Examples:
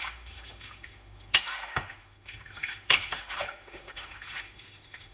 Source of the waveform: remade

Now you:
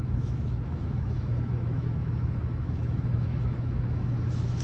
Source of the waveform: remade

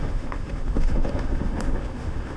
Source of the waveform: remade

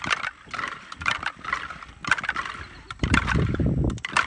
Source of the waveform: recorded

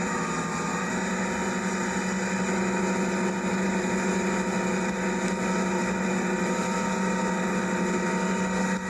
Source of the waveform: recorded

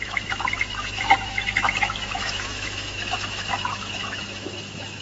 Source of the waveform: remade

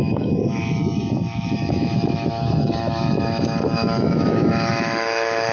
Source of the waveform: remade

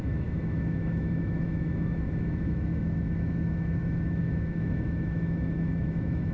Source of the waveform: remade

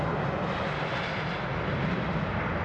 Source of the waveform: recorded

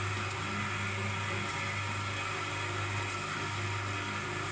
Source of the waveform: recorded